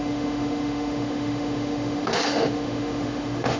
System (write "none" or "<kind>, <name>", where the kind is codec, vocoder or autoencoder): autoencoder, DAC-VAE